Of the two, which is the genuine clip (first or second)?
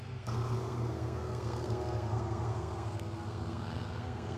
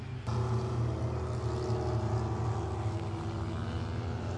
second